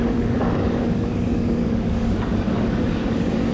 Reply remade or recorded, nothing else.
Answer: remade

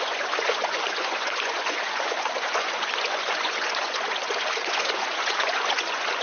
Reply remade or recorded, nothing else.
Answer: remade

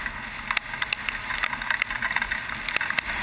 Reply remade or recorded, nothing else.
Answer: recorded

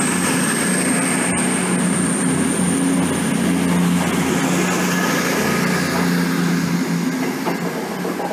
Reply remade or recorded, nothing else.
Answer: recorded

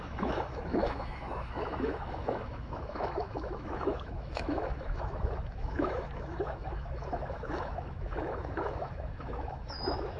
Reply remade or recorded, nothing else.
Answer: remade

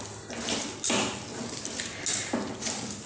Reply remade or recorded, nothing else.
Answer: recorded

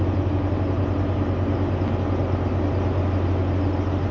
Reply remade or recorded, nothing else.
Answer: recorded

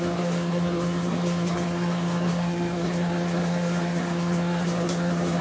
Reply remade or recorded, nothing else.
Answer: remade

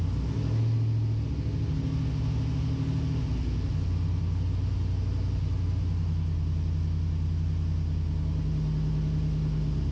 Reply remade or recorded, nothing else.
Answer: recorded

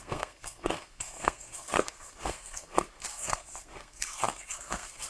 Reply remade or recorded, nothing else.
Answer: remade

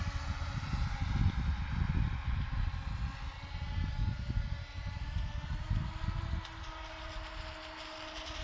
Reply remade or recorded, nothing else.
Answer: recorded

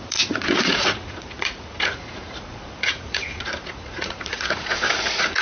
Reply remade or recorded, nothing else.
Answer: remade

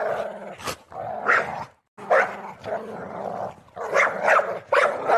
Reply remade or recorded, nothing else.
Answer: recorded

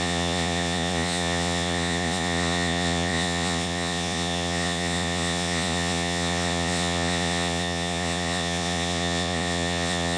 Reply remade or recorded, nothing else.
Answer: remade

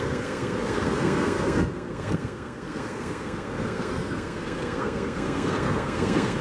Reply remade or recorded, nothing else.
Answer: remade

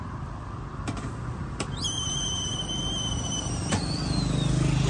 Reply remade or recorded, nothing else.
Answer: recorded